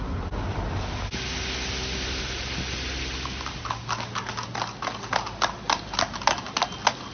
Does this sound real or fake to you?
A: real